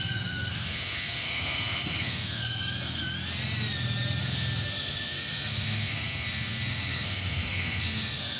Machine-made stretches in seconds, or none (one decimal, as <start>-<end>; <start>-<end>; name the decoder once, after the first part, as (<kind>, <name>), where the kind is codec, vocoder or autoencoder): 0.0-3.0 (codec, SNAC); 4.2-8.4